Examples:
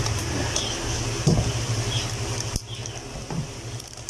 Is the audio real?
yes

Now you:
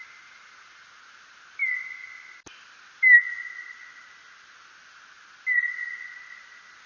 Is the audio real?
yes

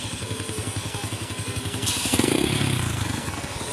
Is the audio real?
no